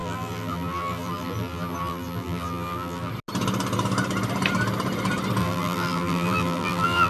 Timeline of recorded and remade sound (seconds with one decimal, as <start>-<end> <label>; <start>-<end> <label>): 0.0-3.1 remade; 3.1-5.4 recorded; 5.4-7.1 remade